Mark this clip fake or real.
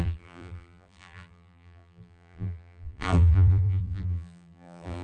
fake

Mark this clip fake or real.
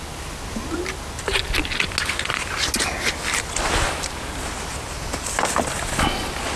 real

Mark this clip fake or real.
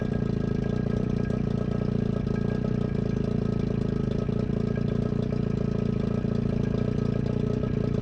real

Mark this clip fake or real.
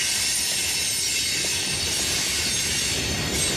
real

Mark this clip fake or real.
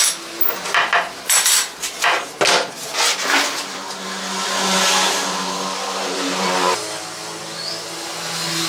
real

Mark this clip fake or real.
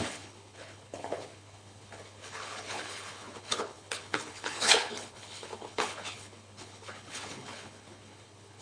fake